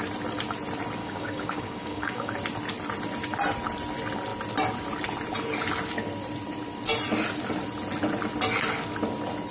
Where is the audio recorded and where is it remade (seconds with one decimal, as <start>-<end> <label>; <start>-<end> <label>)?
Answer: 0.0-1.0 recorded; 1.0-2.3 remade; 2.3-9.5 recorded